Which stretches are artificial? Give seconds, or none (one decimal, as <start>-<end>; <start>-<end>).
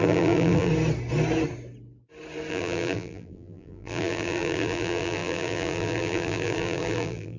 0.0-0.7; 2.5-7.4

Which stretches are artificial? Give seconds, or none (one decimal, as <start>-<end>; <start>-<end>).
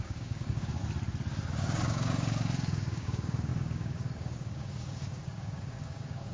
0.0-0.8; 1.5-6.3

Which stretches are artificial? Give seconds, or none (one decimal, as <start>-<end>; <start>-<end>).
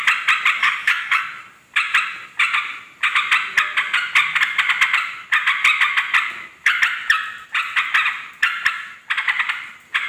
0.6-1.2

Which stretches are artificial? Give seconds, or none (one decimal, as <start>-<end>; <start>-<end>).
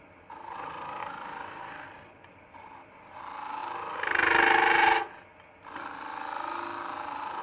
1.0-1.6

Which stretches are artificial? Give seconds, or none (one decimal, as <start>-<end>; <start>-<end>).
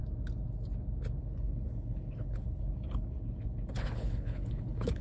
1.2-5.0